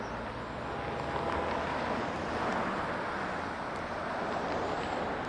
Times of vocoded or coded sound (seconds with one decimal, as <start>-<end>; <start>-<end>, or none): 2.5-4.6